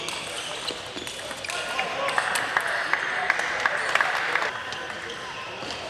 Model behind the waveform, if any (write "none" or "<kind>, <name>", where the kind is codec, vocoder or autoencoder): none